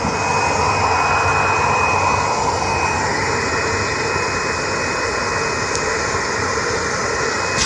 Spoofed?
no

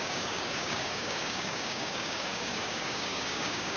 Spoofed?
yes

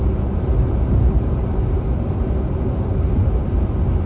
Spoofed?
no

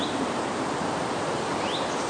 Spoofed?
no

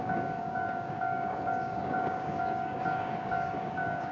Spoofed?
yes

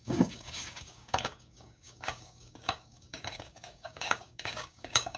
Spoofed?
yes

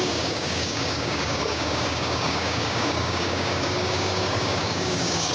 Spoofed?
yes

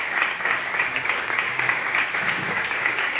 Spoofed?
yes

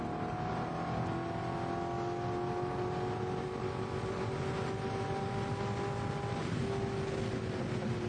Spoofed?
no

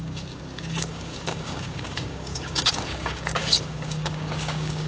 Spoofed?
yes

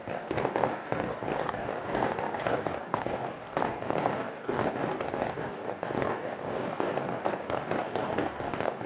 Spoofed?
yes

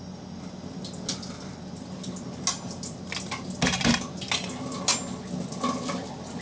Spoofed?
no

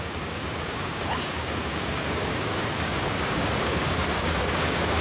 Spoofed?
yes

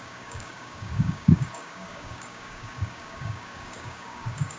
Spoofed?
yes